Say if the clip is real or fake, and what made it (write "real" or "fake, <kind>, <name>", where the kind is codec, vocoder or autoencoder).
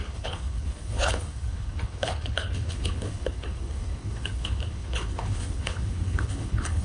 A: fake, codec, HILCodec